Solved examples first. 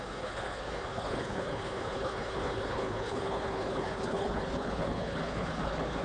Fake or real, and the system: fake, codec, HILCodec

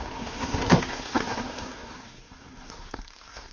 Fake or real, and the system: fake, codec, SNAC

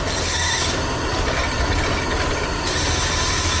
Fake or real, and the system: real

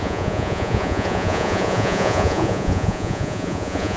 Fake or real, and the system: fake, vocoder, Vocos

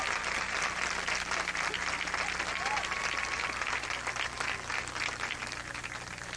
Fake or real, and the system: real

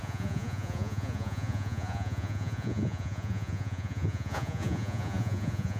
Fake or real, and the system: fake, vocoder, Vocos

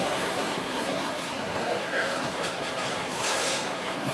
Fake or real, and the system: fake, codec, SNAC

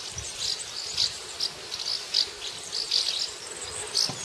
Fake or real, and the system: real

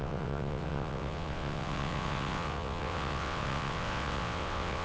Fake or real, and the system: fake, vocoder, WaveNeXt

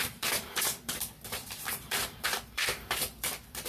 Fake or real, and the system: fake, vocoder, BigVGAN v2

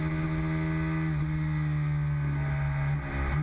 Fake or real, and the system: real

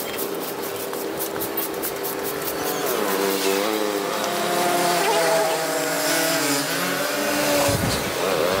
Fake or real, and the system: real